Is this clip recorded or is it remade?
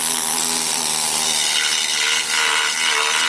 recorded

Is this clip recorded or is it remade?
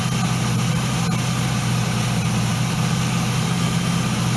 recorded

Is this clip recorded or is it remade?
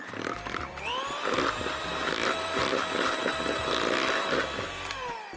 remade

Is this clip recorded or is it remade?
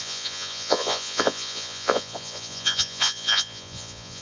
remade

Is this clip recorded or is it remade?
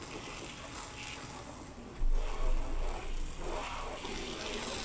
recorded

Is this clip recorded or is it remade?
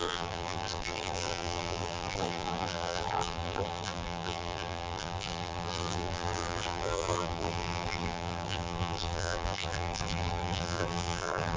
remade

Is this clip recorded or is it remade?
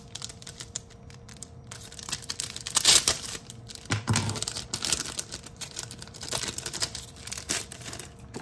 remade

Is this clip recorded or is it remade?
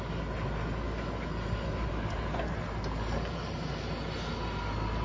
recorded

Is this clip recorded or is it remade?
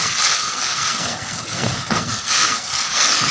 remade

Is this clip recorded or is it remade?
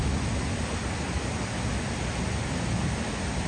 recorded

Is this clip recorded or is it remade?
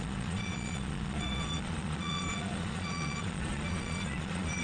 remade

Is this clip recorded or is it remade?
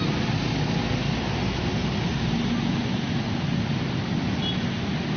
recorded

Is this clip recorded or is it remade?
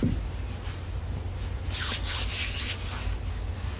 recorded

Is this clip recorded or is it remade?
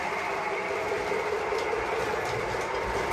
remade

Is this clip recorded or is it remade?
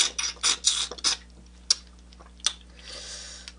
recorded